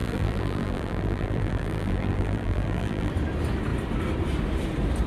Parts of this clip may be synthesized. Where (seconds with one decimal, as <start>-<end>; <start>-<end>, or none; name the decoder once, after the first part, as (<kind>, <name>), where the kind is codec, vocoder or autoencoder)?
0.0-3.1 (vocoder, BigVGAN v2)